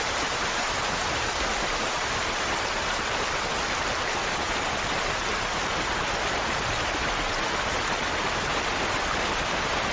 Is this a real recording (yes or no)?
yes